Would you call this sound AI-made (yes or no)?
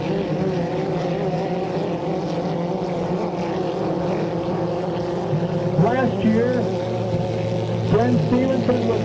no